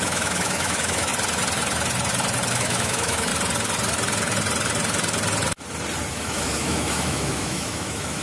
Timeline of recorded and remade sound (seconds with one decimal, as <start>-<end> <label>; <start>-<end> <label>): 0.0-1.1 remade; 1.1-2.5 recorded; 2.5-3.3 remade; 3.3-6.1 recorded; 6.1-8.2 remade

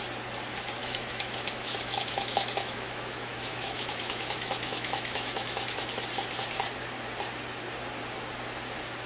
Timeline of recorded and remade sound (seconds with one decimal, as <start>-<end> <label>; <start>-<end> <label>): 0.0-0.8 recorded; 0.8-5.8 remade; 5.8-9.1 recorded

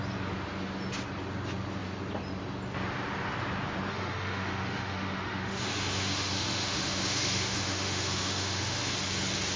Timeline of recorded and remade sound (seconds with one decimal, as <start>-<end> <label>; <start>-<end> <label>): 0.0-3.9 recorded; 3.9-8.9 remade; 8.9-9.6 recorded

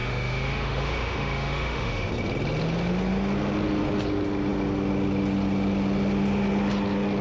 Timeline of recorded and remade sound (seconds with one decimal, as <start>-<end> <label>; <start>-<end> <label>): 0.0-2.1 remade; 2.1-7.2 recorded

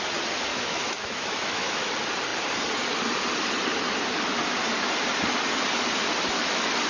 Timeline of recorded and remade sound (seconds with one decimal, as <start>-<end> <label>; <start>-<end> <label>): 0.0-0.5 recorded; 0.5-1.9 remade; 1.9-6.9 recorded